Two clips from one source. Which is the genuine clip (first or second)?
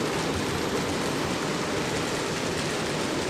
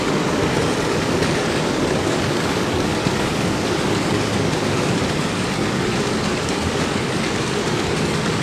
first